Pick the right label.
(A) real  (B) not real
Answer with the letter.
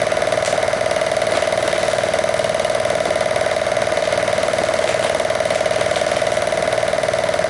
A